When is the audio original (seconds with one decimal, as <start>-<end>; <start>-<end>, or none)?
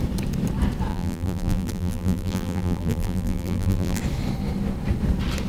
0.0-0.9; 4.0-5.5